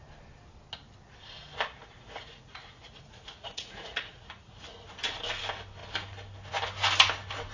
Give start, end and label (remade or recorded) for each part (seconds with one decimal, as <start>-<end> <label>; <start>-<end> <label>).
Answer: 0.0-1.8 recorded; 1.8-4.6 remade; 4.6-7.5 recorded